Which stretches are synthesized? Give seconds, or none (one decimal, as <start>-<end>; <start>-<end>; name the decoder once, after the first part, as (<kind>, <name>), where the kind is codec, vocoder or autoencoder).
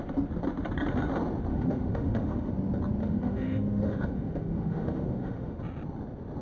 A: 1.5-2.5 (autoencoder, DAC-VAE); 3.0-5.6